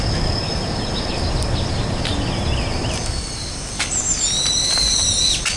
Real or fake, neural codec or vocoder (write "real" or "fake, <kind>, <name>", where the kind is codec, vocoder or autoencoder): real